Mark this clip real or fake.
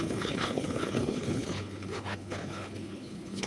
fake